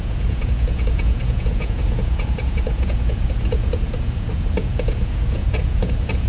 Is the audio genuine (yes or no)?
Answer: no